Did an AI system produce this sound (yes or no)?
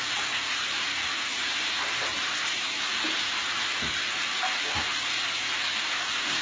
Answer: no